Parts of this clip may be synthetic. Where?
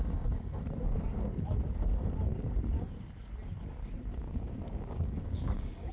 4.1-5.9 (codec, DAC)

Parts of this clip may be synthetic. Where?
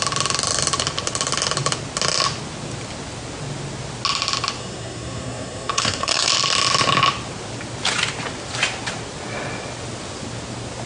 4.6-6.3 (codec, SNAC)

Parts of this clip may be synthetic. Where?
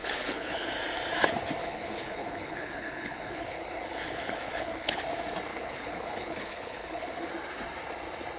0.0-0.7 (codec, HILCodec); 1.6-5.0; 5.5-7.3